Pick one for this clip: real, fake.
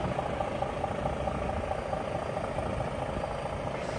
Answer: real